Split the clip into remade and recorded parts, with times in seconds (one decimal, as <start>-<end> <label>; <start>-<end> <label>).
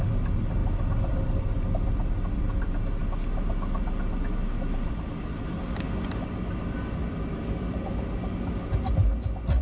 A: 0.0-0.6 recorded; 0.6-1.4 remade; 1.4-9.6 recorded